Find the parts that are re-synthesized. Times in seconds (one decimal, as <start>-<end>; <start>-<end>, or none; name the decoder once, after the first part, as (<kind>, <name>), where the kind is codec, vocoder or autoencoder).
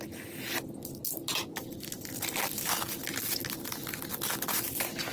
none